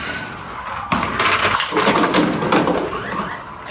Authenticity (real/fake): real